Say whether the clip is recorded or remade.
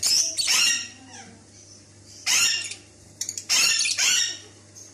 remade